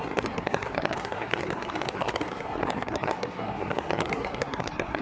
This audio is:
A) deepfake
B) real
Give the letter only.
A